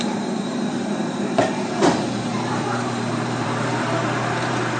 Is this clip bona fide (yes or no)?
no